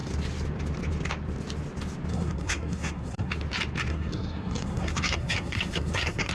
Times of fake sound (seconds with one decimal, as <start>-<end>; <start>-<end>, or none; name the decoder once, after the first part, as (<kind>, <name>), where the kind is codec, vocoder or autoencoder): 2.1-3.3 (codec, SNAC); 3.9-6.3